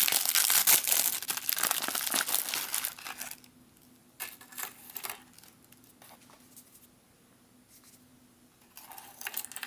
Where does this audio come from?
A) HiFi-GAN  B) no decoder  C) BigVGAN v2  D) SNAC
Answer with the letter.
B